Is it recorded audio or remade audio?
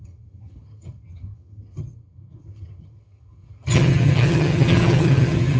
remade